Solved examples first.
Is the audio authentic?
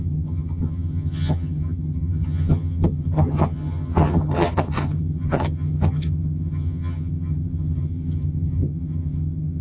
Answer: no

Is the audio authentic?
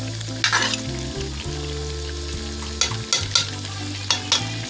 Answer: yes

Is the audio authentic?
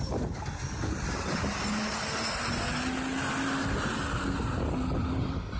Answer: yes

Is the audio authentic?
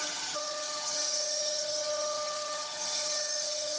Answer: no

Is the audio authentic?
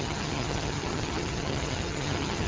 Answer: no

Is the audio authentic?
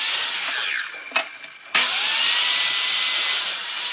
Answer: yes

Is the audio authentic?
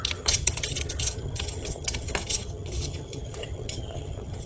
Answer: no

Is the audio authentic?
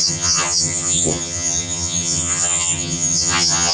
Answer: no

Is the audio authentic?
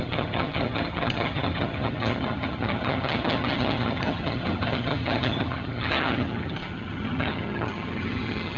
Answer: no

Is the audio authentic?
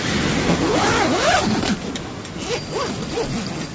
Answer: yes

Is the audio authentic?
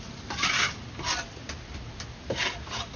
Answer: yes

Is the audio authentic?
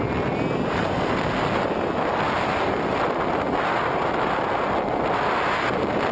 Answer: yes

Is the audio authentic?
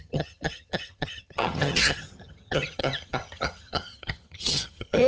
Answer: no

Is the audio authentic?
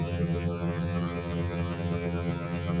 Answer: no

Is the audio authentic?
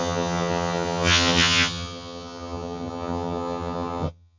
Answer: no